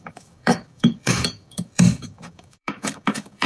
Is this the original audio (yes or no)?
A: no